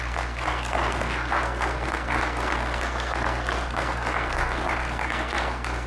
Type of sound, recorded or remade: remade